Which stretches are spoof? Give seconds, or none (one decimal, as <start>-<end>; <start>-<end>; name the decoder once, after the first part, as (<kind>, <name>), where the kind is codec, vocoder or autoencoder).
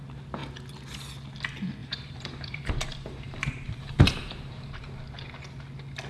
1.8-5.0 (vocoder, BigVGAN v2)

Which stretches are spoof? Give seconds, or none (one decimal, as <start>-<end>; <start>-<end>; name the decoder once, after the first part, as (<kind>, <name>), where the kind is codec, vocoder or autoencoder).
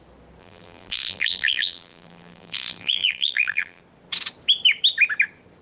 0.4-3.8 (vocoder, BigVGAN v2)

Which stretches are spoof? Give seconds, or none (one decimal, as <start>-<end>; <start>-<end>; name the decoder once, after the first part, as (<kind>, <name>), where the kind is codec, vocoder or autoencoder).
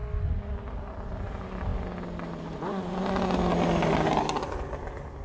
none